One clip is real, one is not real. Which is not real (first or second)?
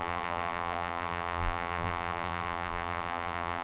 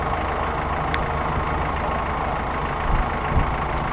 first